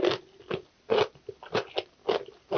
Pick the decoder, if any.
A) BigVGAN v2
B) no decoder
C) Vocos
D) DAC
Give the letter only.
B